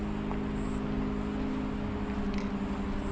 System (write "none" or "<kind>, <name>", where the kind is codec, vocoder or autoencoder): none